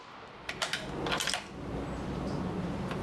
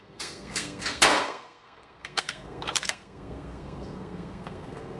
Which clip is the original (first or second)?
first